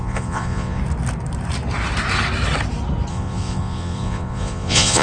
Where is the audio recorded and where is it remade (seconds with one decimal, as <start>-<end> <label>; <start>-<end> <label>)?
0.0-0.8 remade; 0.8-3.1 recorded; 3.1-5.0 remade